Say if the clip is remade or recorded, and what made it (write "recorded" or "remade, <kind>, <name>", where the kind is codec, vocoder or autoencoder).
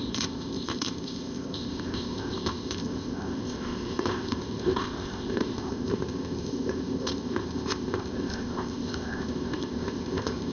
remade, codec, ZipCodec